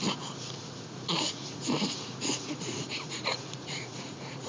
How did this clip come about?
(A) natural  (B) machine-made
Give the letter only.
B